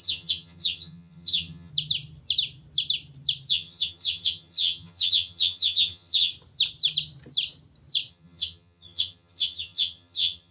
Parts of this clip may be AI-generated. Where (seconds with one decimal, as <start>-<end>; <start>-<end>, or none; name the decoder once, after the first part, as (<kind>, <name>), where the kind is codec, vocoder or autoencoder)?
0.0-1.7 (vocoder, HiFi-GAN); 3.5-6.3; 8.1-10.5